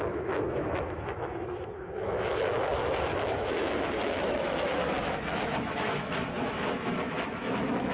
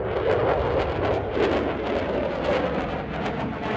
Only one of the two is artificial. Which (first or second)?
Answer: first